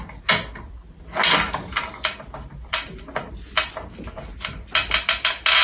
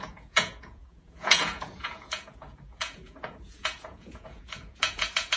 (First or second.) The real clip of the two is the first